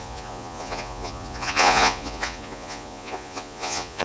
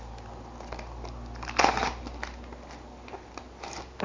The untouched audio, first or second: second